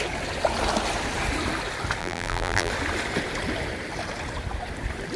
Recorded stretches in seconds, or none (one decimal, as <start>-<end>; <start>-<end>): 0.0-2.0; 2.7-5.2